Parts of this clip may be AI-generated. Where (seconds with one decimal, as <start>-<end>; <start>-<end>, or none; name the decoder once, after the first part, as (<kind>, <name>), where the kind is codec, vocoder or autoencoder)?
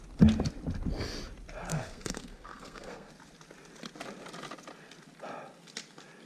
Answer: 1.7-3.1 (codec, SNAC)